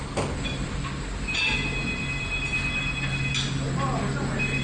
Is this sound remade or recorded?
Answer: recorded